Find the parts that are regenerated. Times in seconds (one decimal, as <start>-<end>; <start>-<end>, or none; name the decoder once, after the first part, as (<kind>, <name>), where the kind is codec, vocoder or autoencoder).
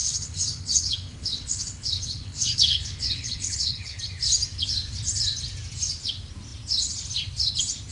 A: 0.0-4.0 (codec, HILCodec)